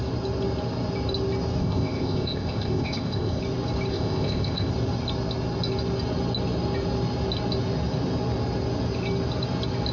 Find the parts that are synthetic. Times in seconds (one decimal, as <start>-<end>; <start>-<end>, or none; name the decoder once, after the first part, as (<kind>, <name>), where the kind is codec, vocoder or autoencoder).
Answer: 1.6-3.4 (codec, ZipCodec); 3.9-4.7